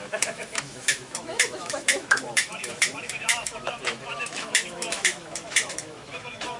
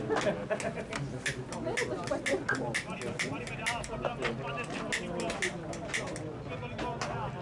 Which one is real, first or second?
second